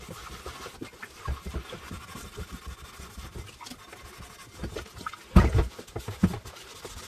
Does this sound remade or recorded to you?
recorded